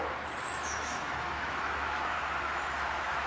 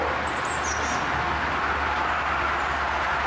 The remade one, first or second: first